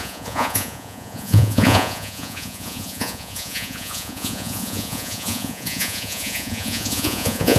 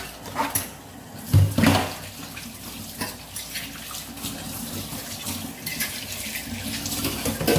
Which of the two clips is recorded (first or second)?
second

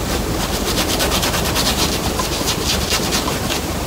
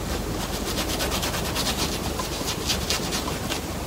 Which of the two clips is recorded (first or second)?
second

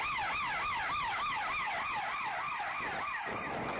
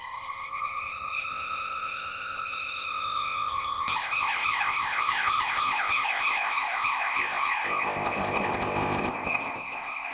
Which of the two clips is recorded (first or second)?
first